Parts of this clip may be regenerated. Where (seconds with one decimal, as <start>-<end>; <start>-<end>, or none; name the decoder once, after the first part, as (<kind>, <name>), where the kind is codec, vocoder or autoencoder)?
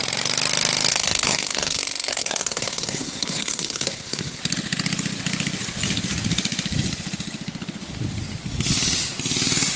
0.9-4.4 (codec, SNAC)